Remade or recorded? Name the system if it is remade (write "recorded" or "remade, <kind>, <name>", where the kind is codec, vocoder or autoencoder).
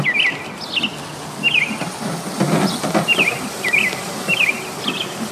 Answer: recorded